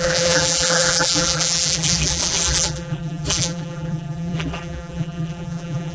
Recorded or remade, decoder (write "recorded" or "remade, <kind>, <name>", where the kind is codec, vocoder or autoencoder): remade, vocoder, BigVGAN v2